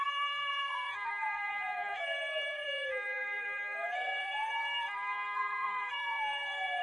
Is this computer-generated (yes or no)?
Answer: yes